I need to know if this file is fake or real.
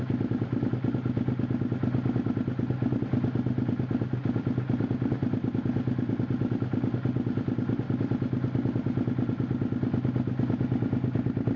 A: real